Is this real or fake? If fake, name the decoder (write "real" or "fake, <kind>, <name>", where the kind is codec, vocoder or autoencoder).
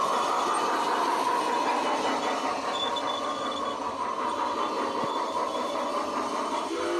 real